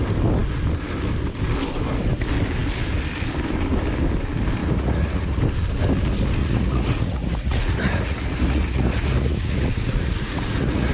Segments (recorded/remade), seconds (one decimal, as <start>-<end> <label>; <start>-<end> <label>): 0.0-4.6 recorded; 4.6-5.4 remade; 5.4-6.4 recorded; 6.4-10.9 remade